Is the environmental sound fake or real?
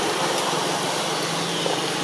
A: real